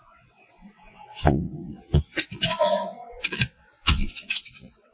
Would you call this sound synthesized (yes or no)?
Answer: yes